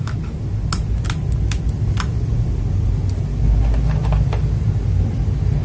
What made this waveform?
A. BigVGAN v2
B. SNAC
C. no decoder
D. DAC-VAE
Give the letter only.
C